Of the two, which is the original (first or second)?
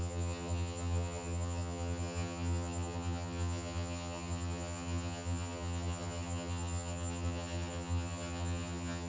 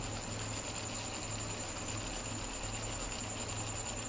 second